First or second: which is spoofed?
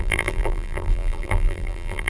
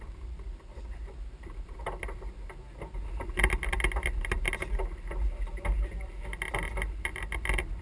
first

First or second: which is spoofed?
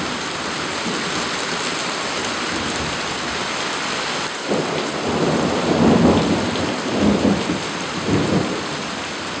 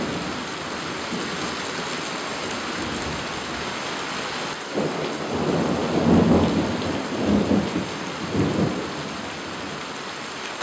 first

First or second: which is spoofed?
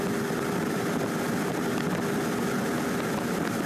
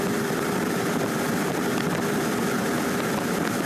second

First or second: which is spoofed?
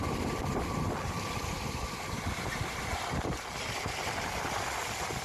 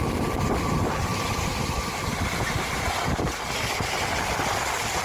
first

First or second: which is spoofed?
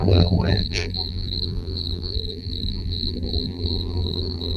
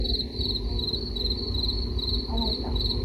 first